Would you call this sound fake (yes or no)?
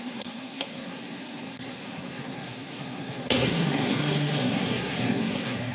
yes